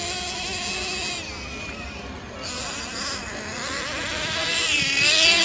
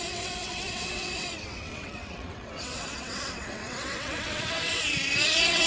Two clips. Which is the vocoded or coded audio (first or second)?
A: second